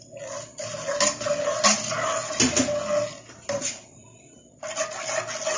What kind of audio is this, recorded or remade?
recorded